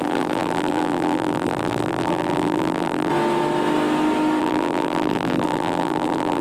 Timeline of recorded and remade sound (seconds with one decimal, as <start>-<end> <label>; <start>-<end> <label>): 0.0-3.1 remade; 3.1-4.4 recorded; 4.4-6.4 remade